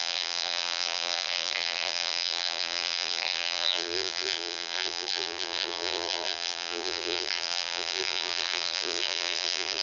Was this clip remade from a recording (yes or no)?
yes